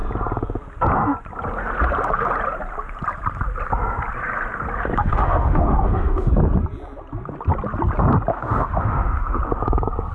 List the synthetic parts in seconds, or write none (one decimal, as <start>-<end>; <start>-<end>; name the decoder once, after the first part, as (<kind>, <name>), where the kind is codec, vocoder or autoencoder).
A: 5.0-6.3 (autoencoder, DAC-VAE); 8.3-9.4